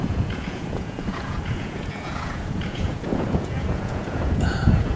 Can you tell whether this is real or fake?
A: fake